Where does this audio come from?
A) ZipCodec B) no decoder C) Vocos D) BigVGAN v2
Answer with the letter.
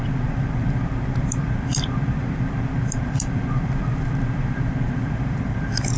D